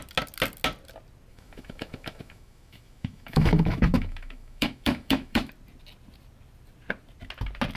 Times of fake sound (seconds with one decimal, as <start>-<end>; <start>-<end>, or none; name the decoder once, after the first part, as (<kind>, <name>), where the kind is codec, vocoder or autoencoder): 1.3-5.5 (autoencoder, DAC-VAE)